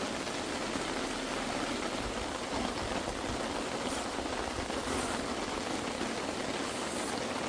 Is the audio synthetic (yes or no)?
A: no